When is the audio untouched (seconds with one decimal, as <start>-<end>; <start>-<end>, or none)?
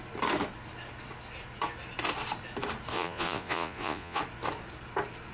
0.0-2.9; 4.2-5.3